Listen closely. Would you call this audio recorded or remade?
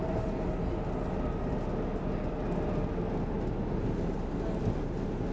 recorded